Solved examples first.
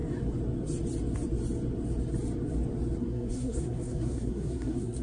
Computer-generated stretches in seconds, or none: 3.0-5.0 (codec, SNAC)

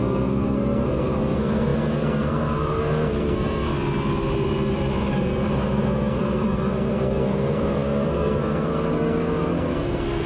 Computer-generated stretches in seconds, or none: 0.0-3.7 (codec, SNAC); 5.5-10.3